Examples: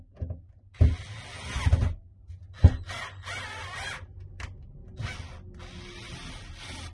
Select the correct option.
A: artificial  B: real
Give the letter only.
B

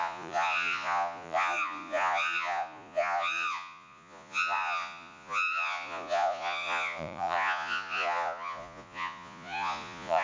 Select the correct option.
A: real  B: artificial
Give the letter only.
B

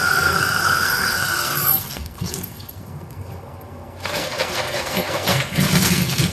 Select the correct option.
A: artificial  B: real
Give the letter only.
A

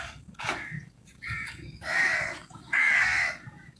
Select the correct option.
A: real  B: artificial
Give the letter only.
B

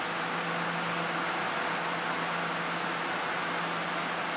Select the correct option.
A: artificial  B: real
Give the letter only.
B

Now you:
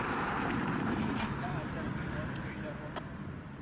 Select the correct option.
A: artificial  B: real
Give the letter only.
B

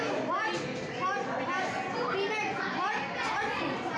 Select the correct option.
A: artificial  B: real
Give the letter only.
B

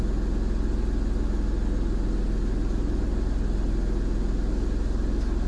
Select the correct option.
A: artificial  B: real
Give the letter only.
B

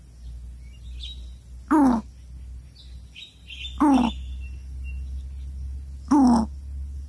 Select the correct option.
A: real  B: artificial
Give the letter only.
A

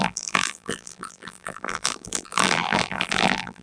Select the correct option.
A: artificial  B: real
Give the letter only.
A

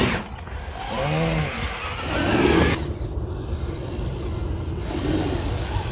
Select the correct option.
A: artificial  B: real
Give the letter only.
B